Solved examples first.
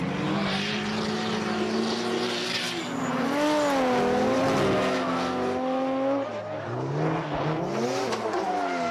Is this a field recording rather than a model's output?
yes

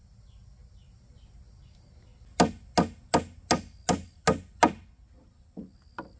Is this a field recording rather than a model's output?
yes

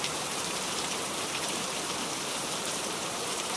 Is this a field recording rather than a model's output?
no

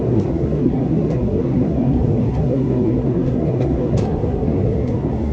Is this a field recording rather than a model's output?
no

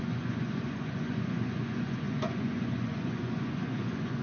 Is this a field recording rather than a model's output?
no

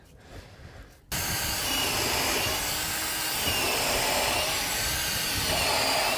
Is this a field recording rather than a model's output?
yes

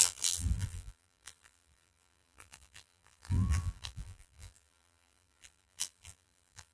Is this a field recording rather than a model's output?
no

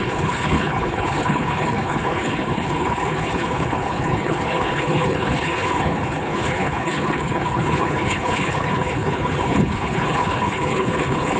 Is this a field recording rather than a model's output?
no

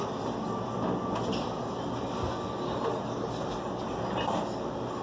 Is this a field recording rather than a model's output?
yes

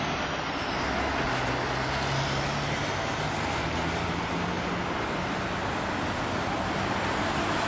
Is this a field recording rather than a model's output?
yes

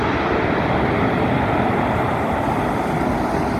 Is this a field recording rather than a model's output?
yes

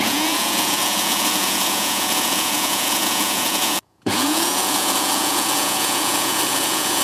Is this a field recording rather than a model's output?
no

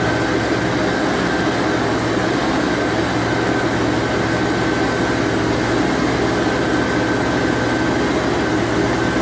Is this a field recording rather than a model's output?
yes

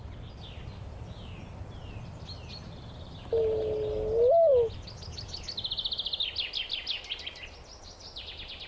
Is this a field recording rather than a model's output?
yes